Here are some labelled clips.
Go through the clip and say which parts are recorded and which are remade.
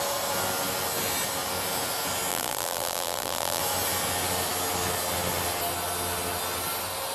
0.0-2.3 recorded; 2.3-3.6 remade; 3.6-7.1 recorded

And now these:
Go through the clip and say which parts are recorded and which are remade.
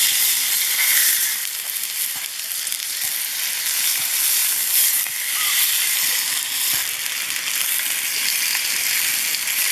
0.0-9.7 recorded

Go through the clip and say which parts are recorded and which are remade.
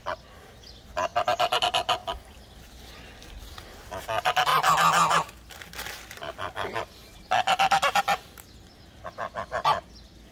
0.0-10.3 recorded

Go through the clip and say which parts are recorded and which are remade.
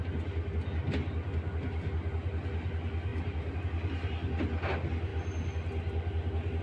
0.0-3.1 recorded; 3.1-3.6 remade; 3.6-6.6 recorded